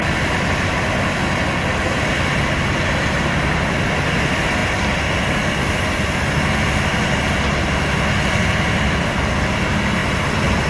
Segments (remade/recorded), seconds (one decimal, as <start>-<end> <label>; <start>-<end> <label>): 0.0-10.7 recorded